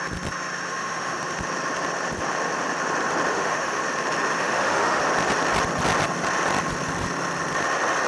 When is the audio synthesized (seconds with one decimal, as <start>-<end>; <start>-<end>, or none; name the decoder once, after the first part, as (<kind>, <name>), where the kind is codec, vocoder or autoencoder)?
0.7-1.2 (autoencoder, DAC-VAE); 3.3-3.8; 4.4-5.0